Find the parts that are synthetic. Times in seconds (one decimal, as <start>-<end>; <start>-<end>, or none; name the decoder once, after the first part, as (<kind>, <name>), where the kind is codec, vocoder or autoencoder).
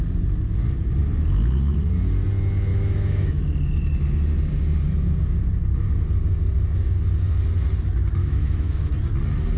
2.7-3.4 (autoencoder, DAC-VAE); 8.2-8.9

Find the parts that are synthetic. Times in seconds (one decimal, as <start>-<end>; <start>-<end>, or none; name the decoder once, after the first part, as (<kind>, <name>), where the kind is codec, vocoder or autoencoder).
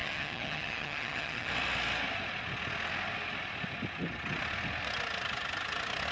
0.0-1.5 (vocoder, HiFi-GAN)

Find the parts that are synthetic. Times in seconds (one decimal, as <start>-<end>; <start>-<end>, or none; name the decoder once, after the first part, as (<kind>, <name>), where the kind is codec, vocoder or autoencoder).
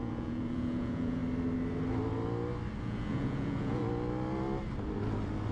0.0-1.2 (vocoder, Vocos); 2.8-3.8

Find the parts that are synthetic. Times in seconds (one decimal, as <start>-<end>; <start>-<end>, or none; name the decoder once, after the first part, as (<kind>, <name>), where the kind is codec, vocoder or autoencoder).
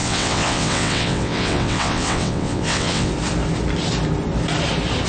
0.0-3.1 (vocoder, WaveNeXt)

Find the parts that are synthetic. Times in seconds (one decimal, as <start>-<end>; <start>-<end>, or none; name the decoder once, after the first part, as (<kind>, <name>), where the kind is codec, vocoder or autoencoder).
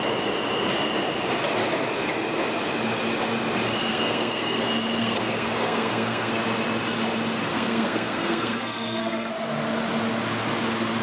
3.9-4.6 (codec, SNAC); 5.0-6.3; 7.5-9.3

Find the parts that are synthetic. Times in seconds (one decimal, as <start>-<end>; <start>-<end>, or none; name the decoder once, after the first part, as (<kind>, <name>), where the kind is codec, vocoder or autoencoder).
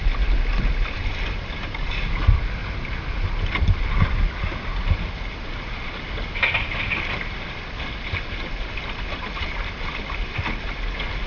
none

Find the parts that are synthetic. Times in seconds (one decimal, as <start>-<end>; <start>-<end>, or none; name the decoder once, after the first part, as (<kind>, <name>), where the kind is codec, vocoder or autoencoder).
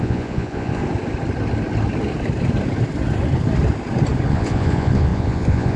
0.0-0.8 (vocoder, Vocos); 4.3-5.8